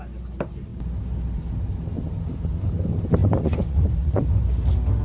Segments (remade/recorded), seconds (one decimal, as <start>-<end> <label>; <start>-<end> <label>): 0.0-3.2 recorded; 3.2-4.2 remade; 4.2-5.0 recorded